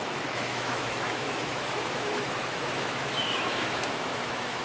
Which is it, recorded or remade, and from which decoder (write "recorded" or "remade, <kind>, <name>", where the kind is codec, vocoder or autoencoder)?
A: remade, autoencoder, DAC-VAE